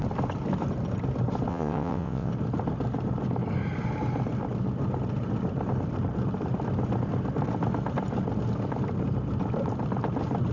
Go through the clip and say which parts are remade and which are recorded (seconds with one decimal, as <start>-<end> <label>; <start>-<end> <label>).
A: 0.0-1.5 recorded; 1.5-2.3 remade; 2.3-10.5 recorded